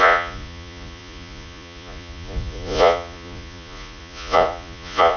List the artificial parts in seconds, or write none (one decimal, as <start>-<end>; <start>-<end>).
0.0-5.2